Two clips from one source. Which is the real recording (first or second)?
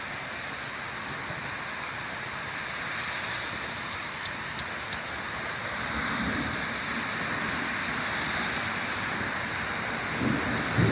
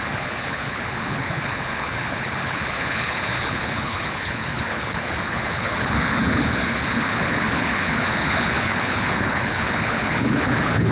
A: first